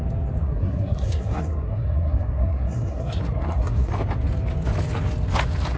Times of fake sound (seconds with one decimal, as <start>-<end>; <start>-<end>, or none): 0.4-3.9